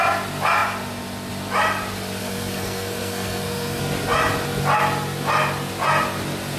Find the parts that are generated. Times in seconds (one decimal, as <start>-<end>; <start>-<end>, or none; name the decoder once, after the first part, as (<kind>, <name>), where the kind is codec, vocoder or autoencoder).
2.2-3.8 (codec, SNAC)